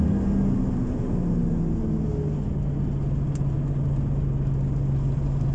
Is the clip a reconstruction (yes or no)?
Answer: no